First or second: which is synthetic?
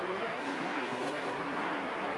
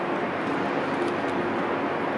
first